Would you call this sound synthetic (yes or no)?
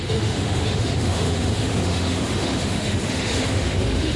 yes